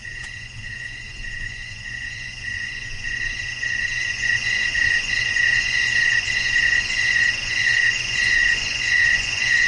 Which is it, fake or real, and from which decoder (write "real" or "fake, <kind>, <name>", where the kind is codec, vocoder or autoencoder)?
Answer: fake, vocoder, Vocos